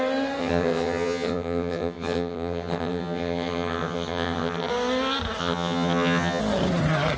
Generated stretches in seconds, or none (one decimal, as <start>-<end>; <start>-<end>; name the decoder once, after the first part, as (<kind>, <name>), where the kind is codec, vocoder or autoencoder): 0.4-4.7 (vocoder, HiFi-GAN); 5.4-6.4